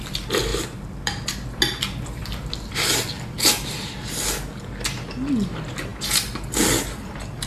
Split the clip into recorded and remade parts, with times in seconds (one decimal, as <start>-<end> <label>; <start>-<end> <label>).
0.0-0.5 recorded; 0.5-1.6 remade; 1.6-7.5 recorded